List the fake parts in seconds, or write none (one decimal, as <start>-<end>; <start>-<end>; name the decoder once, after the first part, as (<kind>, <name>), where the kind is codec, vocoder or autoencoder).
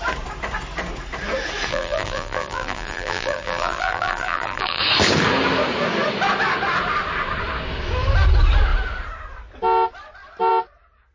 1.7-4.8 (vocoder, BigVGAN v2)